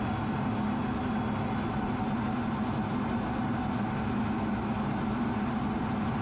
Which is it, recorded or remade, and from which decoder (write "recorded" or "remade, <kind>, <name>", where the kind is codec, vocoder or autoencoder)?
recorded